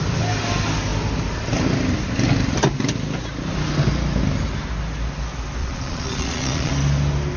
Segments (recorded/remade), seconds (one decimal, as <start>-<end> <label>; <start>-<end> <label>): 0.0-5.6 recorded; 5.6-6.7 remade; 6.7-7.4 recorded